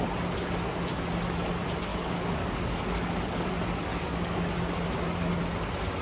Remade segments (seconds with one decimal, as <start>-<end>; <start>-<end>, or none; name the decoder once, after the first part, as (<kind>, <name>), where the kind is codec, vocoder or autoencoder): 1.9-3.5 (codec, DAC); 3.9-4.5

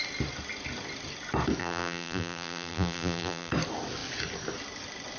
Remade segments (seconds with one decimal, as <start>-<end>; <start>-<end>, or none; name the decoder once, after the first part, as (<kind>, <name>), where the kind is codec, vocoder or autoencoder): 1.6-3.5 (vocoder, BigVGAN v2)

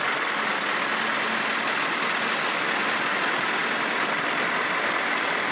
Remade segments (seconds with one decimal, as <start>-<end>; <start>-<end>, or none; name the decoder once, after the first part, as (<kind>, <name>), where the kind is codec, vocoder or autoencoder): 0.0-3.6 (vocoder, BigVGAN v2); 4.1-5.5

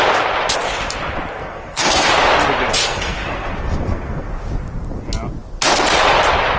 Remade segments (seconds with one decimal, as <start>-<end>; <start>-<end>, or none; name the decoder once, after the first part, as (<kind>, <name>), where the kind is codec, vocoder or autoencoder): 1.4-2.1 (codec, SNAC); 2.8-4.3

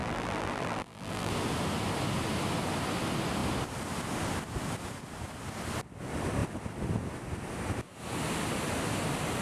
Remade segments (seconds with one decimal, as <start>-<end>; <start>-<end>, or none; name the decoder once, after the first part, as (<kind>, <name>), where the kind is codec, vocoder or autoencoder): 0.0-1.3 (vocoder, BigVGAN v2)

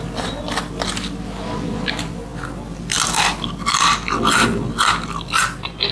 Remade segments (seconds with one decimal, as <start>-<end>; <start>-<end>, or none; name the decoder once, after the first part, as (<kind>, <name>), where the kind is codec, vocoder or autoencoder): 0.0-2.3 (vocoder, BigVGAN v2)

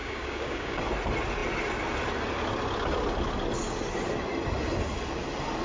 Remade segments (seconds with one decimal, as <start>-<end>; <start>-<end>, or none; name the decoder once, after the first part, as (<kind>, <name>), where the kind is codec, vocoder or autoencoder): 0.0-0.8 (codec, DAC)